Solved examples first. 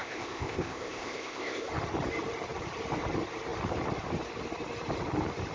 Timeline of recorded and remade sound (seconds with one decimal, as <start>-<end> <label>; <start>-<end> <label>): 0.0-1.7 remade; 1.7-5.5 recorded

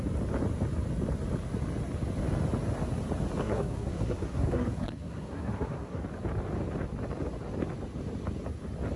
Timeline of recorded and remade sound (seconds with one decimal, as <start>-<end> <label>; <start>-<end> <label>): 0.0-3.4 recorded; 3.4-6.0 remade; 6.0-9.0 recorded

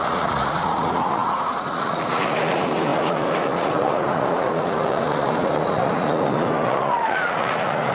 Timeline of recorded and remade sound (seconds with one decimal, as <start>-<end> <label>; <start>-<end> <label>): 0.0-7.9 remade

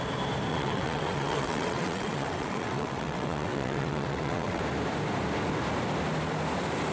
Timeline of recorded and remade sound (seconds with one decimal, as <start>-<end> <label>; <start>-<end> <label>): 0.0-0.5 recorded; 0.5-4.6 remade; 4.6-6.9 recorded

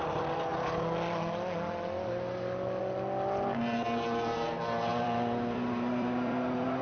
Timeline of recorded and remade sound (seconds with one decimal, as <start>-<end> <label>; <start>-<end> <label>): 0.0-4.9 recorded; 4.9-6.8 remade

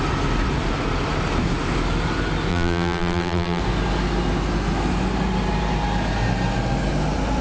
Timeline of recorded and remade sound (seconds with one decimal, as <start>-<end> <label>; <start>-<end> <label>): 0.0-2.5 recorded; 2.5-3.6 remade; 3.6-7.4 recorded

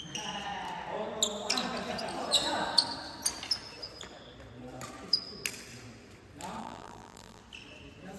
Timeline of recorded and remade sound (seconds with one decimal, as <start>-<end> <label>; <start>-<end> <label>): 0.0-6.6 recorded; 6.6-7.4 remade; 7.4-8.2 recorded

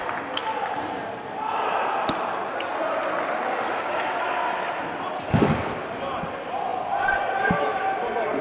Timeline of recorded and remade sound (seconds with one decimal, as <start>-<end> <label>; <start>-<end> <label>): 0.0-8.4 recorded